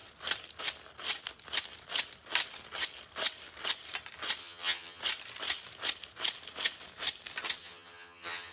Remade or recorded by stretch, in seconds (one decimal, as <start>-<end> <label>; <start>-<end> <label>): 0.0-4.4 recorded; 4.4-5.0 remade; 5.0-7.6 recorded; 7.6-8.5 remade